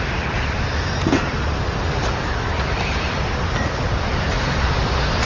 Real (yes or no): yes